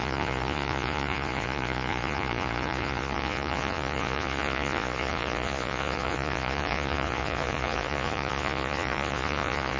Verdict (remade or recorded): remade